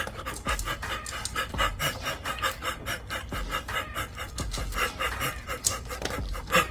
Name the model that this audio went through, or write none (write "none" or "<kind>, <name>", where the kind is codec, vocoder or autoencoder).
none